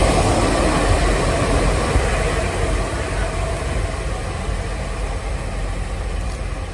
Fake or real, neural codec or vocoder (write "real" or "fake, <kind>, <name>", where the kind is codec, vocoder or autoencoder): real